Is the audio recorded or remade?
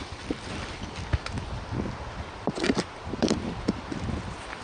remade